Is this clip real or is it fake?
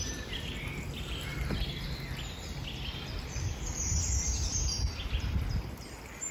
real